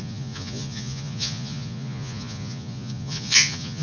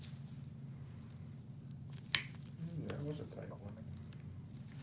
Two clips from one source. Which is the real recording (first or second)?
second